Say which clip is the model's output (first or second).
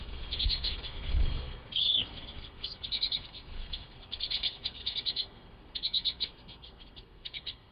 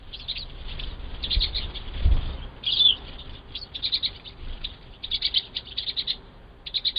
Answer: first